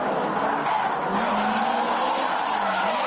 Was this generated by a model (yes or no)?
no